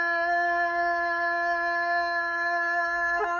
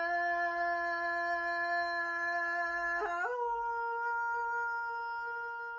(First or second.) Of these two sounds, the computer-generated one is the first